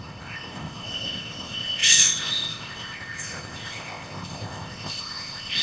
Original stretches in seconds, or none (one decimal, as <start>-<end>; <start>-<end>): none